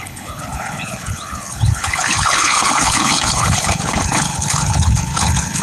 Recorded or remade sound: remade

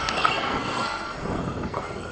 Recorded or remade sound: remade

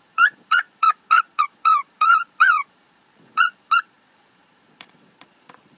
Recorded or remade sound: remade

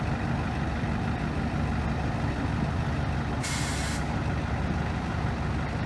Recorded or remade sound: recorded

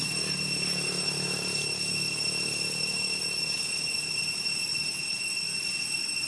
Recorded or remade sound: recorded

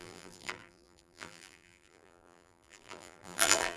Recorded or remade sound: remade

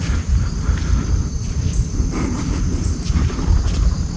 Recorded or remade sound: recorded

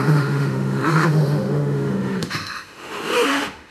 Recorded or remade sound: remade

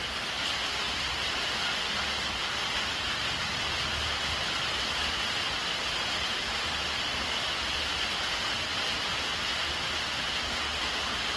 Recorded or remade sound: recorded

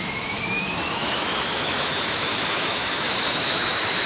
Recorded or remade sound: remade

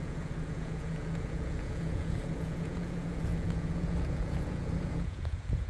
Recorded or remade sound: remade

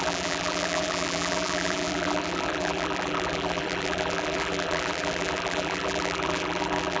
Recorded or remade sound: remade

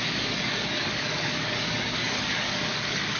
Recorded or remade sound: remade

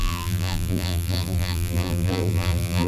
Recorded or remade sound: remade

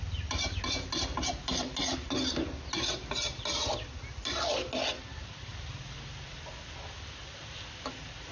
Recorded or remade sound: recorded